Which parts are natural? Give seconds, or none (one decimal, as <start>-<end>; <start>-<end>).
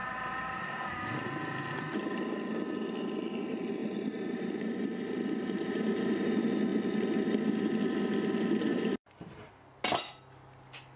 0.0-3.8; 6.3-8.7; 9.6-11.0